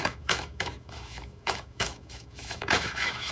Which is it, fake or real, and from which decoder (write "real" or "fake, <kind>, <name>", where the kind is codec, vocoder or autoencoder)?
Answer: fake, autoencoder, DAC-VAE